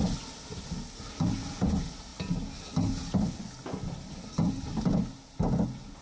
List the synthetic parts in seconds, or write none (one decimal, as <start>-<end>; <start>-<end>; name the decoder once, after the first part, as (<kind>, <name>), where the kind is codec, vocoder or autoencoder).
none